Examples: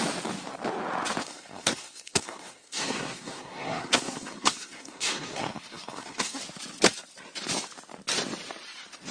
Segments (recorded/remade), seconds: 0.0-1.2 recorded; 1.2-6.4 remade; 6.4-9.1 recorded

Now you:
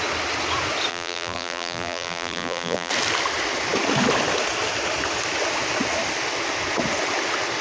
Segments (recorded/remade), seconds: 0.0-0.9 recorded; 0.9-2.9 remade; 2.9-7.6 recorded

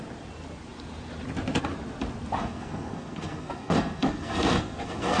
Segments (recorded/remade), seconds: 0.0-2.4 recorded; 2.4-5.2 remade

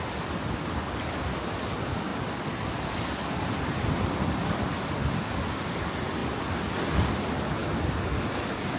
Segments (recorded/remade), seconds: 0.0-8.8 recorded

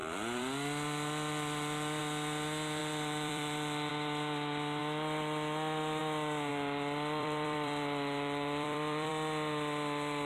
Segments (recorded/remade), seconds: 0.0-2.0 remade; 2.0-2.8 recorded; 2.8-3.9 remade; 3.9-6.5 recorded; 6.5-9.1 remade; 9.1-10.3 recorded

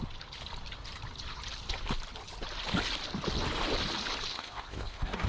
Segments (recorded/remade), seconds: 0.0-4.3 recorded; 4.3-5.3 remade

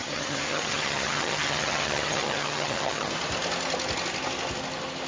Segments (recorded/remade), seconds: 0.0-3.1 remade; 3.1-5.1 recorded